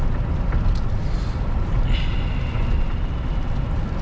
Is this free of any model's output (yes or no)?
yes